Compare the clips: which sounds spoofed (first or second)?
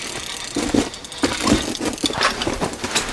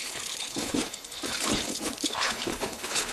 second